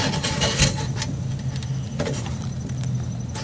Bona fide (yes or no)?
yes